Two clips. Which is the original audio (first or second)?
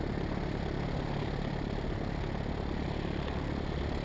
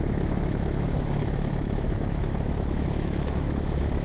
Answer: first